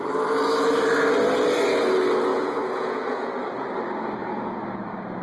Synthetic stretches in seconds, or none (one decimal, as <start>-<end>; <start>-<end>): 2.3-3.3